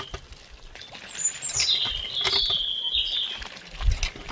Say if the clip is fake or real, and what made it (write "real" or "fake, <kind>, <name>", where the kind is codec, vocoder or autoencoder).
real